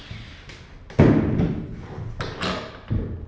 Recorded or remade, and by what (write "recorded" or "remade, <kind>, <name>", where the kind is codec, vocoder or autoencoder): recorded